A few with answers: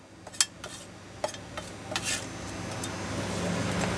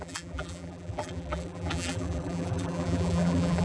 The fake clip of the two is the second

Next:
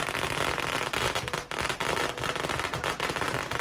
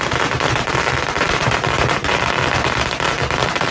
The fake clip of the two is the second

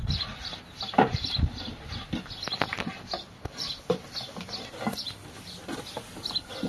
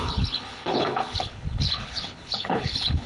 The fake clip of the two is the second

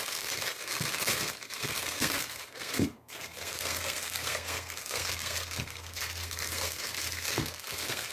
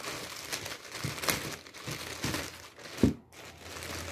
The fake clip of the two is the first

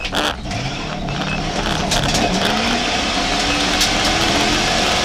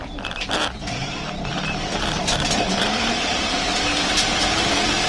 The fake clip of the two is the second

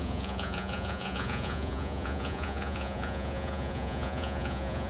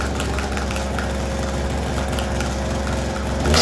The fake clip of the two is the first